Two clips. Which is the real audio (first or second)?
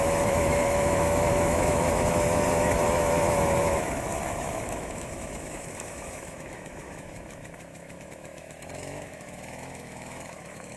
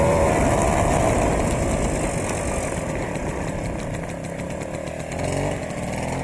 second